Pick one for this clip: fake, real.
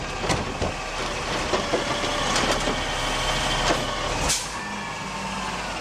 real